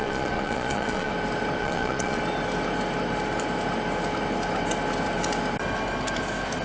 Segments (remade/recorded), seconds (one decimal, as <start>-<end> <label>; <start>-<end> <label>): 0.0-1.1 remade; 1.1-1.6 recorded; 1.6-2.2 remade; 2.2-6.6 recorded